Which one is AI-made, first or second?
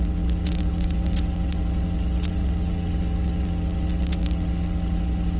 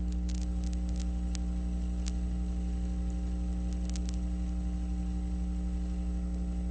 first